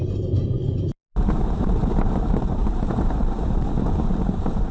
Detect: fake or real fake